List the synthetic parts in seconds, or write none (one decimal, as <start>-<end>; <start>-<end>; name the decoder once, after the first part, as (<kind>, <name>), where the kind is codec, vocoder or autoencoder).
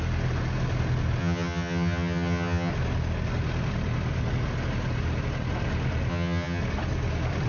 1.2-2.7 (vocoder, HiFi-GAN); 6.1-6.6